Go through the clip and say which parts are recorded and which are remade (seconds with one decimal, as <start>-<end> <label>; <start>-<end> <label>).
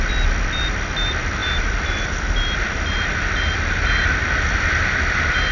0.0-5.5 recorded